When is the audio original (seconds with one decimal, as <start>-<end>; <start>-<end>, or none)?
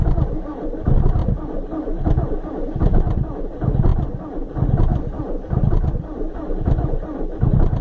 0.0-4.9; 6.3-7.8